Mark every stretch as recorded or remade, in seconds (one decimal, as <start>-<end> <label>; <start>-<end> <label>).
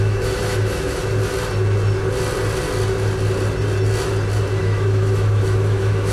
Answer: 0.0-1.0 remade; 1.0-4.6 recorded; 4.6-6.1 remade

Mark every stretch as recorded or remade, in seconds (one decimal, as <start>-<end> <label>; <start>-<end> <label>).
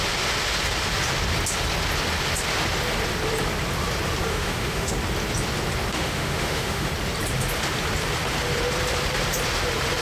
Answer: 0.0-4.3 recorded; 4.3-4.9 remade; 4.9-5.9 recorded; 5.9-6.9 remade; 6.9-10.0 recorded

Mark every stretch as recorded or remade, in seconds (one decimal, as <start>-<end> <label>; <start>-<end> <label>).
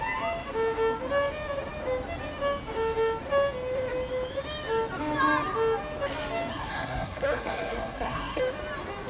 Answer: 0.0-6.5 recorded; 6.5-8.4 remade; 8.4-9.1 recorded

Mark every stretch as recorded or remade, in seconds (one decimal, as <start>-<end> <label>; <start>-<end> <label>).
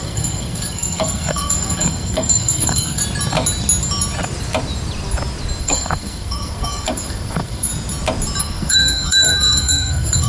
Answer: 0.0-3.0 remade; 3.0-5.6 recorded; 5.6-7.7 remade; 7.7-8.4 recorded; 8.4-10.3 remade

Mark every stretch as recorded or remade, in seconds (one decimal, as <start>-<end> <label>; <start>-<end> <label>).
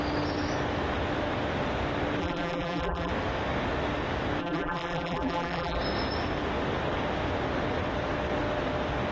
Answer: 0.0-2.2 recorded; 2.2-3.1 remade; 3.1-4.4 recorded; 4.4-5.8 remade; 5.8-9.1 recorded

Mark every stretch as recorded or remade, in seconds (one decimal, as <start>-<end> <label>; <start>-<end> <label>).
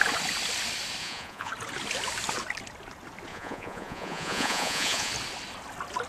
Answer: 0.0-1.0 recorded; 1.0-1.5 remade; 1.5-3.3 recorded; 3.3-5.1 remade; 5.1-6.1 recorded